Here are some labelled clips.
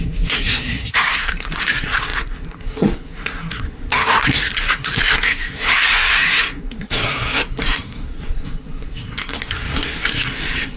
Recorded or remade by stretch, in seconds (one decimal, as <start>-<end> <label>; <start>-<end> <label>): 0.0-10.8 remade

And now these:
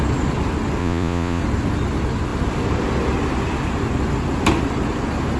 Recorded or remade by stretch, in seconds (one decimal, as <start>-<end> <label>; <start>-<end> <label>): 0.0-0.8 recorded; 0.8-1.4 remade; 1.4-5.4 recorded

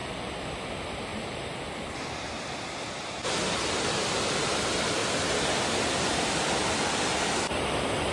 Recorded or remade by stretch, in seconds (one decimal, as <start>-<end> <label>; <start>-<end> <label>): 0.0-0.6 remade; 0.6-1.1 recorded; 1.1-1.7 remade; 1.7-8.1 recorded

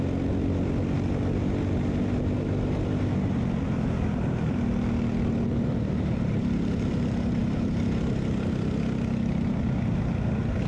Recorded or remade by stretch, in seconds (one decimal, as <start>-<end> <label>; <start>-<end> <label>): 0.0-10.7 recorded

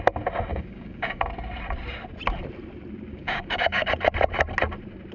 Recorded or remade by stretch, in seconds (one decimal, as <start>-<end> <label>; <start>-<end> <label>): 0.0-0.5 recorded; 0.5-1.2 remade; 1.2-3.1 recorded; 3.1-3.9 remade; 3.9-5.1 recorded